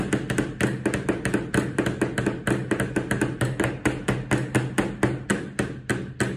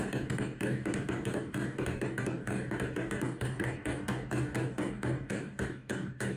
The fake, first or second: second